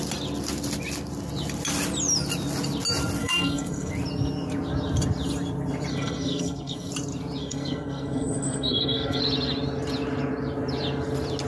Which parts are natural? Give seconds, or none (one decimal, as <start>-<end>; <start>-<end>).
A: 0.0-3.2; 3.9-5.9; 6.9-7.4; 9.2-11.5